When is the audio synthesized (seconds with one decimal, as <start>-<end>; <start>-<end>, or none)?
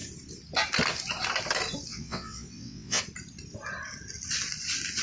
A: 1.9-3.0